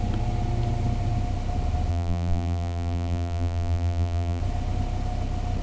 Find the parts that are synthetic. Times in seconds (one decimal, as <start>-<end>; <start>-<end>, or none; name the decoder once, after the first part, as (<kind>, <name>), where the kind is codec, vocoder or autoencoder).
1.9-4.4 (vocoder, BigVGAN v2)